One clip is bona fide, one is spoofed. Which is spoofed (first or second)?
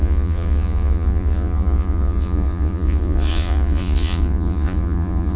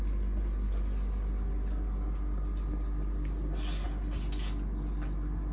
first